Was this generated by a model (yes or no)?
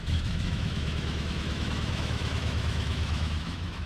yes